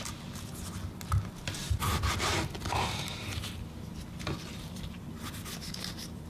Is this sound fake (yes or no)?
no